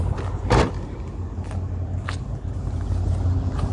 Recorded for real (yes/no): yes